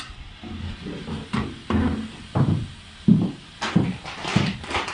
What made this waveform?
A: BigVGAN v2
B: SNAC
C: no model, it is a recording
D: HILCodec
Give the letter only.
A